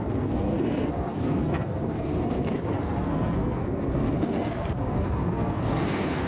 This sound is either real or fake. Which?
fake